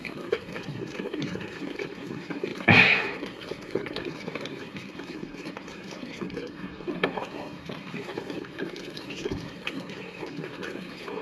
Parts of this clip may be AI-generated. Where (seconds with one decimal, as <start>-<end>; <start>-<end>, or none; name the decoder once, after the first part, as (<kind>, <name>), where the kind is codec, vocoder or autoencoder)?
0.0-11.2 (codec, SNAC)